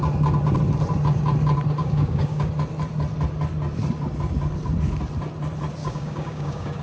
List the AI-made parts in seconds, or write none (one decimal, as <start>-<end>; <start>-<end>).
1.8-2.5; 5.8-6.8